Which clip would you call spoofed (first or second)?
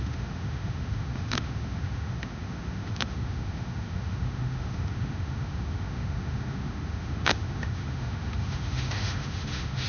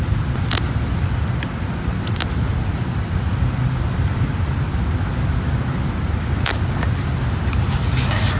first